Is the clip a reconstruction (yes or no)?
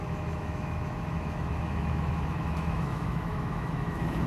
yes